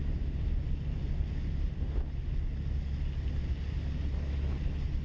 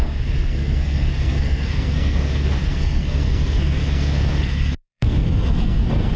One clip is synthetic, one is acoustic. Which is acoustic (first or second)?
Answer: first